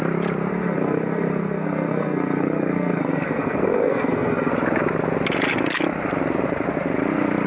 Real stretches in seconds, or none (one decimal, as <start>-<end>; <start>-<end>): 0.0-0.5; 4.5-7.5

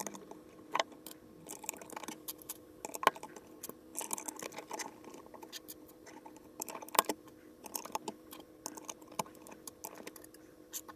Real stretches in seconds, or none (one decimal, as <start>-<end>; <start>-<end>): 0.0-11.0

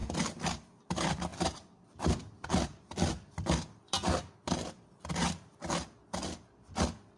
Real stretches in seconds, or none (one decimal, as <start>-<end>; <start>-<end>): 0.0-1.3; 4.3-7.2